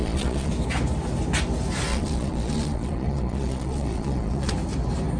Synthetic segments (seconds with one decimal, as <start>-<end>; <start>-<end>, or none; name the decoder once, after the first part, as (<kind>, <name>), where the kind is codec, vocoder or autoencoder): 0.0-0.5 (vocoder, Vocos); 1.9-4.5